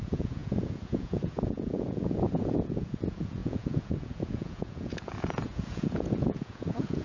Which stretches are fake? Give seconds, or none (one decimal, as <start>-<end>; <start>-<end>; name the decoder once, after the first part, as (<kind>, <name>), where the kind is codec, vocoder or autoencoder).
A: 0.0-7.0 (vocoder, Vocos)